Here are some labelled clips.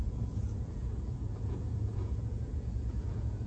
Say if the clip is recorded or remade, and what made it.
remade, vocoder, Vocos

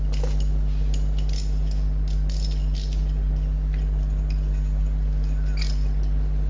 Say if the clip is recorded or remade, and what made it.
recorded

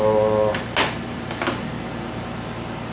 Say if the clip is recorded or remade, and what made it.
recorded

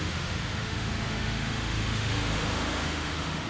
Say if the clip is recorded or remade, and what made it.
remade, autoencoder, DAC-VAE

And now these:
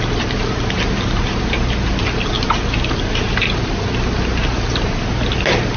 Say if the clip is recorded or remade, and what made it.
recorded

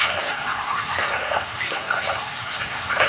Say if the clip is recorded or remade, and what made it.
remade, codec, SNAC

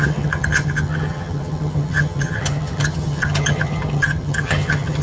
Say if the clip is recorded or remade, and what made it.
remade, vocoder, HiFi-GAN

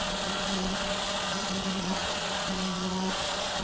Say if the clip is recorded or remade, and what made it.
remade, vocoder, Vocos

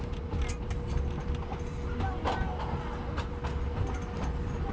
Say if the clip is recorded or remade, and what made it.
recorded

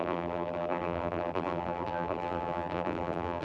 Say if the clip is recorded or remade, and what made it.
remade, vocoder, BigVGAN v2